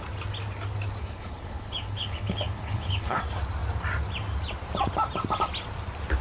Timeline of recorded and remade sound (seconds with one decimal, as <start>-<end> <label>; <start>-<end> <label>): 0.0-1.0 recorded; 1.0-3.2 remade; 3.2-6.2 recorded